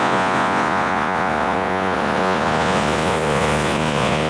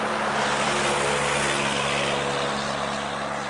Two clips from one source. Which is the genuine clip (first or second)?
second